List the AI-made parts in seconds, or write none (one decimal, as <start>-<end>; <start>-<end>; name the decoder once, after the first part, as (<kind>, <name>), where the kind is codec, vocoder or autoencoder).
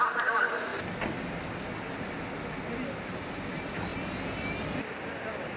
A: none